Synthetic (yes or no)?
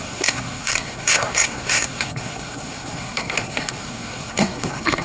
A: yes